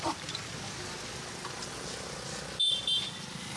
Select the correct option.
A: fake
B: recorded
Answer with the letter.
B